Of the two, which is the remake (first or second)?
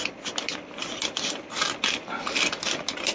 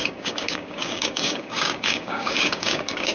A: second